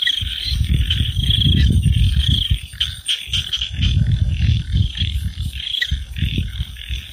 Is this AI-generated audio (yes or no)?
yes